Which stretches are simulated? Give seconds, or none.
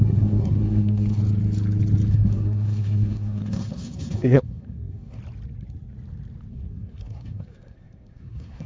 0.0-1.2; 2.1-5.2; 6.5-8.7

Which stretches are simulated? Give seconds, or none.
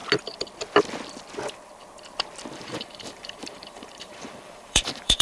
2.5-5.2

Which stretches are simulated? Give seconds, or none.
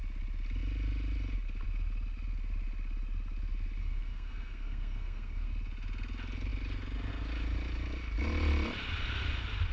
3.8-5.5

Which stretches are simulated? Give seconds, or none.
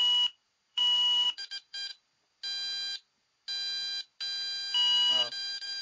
0.7-1.9; 5.1-5.8